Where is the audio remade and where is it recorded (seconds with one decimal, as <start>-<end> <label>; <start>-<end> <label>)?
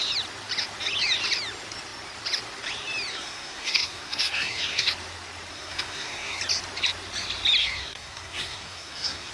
0.0-3.1 recorded; 3.1-4.9 remade; 4.9-5.5 recorded; 5.5-6.4 remade; 6.4-7.6 recorded; 7.6-9.3 remade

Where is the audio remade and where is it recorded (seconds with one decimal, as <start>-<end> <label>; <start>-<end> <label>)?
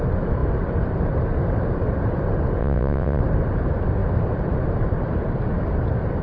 0.0-2.6 recorded; 2.6-3.2 remade; 3.2-6.2 recorded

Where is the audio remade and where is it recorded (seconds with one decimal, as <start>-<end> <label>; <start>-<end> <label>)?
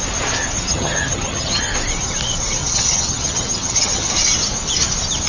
0.0-0.7 recorded; 0.7-1.6 remade; 1.6-2.6 recorded; 2.6-4.1 remade; 4.1-5.3 recorded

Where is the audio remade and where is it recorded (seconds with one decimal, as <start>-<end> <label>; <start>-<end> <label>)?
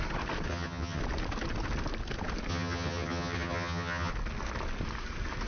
0.0-0.5 recorded; 0.5-1.0 remade; 1.0-2.5 recorded; 2.5-4.1 remade; 4.1-5.5 recorded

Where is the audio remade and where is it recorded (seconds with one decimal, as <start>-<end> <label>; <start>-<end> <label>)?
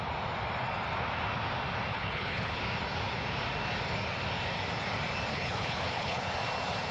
0.0-1.9 recorded; 1.9-2.6 remade; 2.6-5.3 recorded; 5.3-6.3 remade; 6.3-6.9 recorded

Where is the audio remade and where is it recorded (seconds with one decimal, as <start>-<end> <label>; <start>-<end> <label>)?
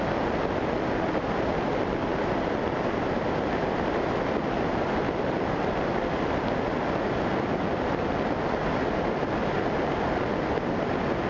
0.0-11.3 recorded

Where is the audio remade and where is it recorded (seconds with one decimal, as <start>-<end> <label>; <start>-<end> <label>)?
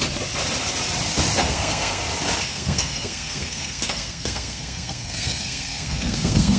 0.0-1.4 recorded; 1.4-2.0 remade; 2.0-2.5 recorded; 2.5-6.6 remade